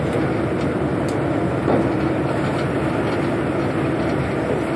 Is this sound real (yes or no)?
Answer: yes